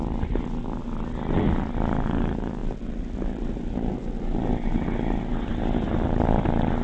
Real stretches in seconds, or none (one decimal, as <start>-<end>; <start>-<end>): 0.0-6.8